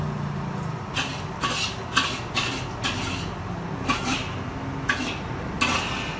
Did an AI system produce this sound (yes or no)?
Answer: no